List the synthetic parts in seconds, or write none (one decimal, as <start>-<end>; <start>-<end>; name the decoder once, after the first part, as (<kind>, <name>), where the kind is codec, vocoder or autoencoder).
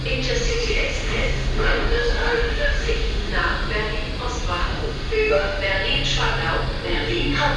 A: 0.5-3.3 (autoencoder, DAC-VAE); 4.6-5.6